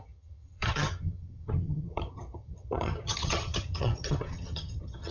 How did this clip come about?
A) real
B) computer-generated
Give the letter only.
B